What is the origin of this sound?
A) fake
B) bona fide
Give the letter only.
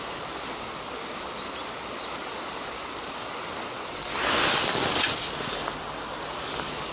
B